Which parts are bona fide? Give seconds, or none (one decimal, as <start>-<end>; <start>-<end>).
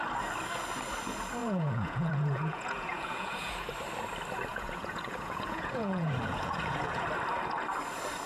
0.0-1.4; 3.7-4.5; 7.0-8.3